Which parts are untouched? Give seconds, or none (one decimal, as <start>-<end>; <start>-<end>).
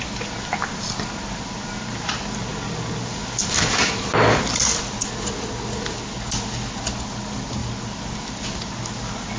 0.0-9.4